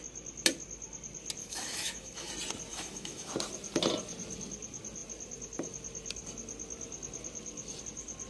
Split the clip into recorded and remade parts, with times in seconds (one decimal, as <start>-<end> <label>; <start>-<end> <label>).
0.0-1.4 recorded; 1.4-2.3 remade; 2.3-2.7 recorded; 2.7-3.3 remade; 3.3-8.3 recorded